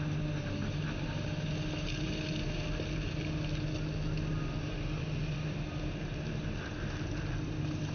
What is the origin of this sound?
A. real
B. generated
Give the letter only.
A